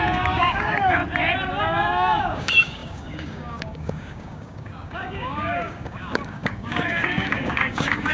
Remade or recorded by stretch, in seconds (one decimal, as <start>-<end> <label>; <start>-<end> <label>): 0.0-1.0 remade; 1.0-1.6 recorded; 1.6-8.1 remade